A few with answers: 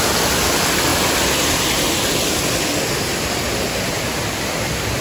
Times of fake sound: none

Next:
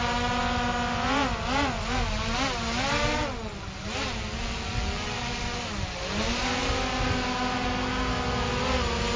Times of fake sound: none

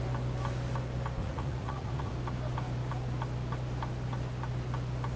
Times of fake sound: 1.2-2.1

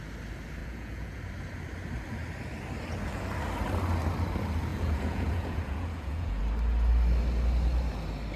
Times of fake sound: 0.6-1.2; 4.7-6.4

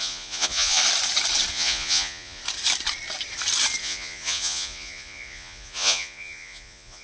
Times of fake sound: 0.0-0.8; 1.5-2.4; 3.8-7.0

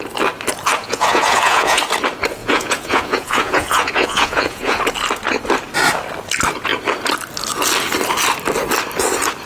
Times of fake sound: 0.8-1.8; 2.4-4.8